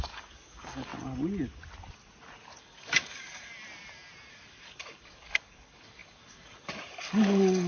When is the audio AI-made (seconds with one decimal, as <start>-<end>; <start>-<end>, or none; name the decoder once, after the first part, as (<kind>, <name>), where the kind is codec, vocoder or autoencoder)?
0.0-0.9 (codec, DAC); 2.6-3.5; 4.3-7.7